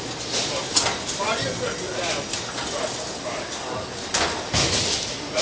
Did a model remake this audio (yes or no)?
no